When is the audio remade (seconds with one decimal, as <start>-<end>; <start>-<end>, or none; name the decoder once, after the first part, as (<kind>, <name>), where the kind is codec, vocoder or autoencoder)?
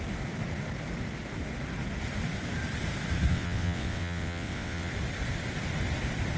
3.3-4.9 (vocoder, WaveNeXt)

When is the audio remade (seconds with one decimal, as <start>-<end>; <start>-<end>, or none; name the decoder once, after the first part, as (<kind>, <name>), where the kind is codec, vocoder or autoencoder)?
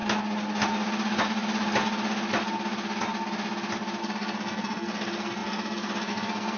4.0-6.6 (codec, SNAC)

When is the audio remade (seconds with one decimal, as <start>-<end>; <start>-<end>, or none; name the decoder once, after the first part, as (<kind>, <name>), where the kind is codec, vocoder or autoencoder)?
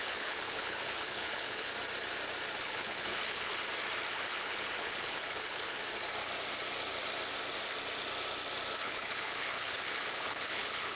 0.0-1.7 (codec, HILCodec); 2.6-3.5; 4.1-5.7; 8.8-11.0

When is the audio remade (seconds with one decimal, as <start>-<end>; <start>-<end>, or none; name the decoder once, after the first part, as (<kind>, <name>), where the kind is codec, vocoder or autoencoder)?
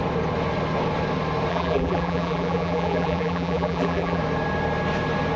1.5-4.2 (vocoder, BigVGAN v2)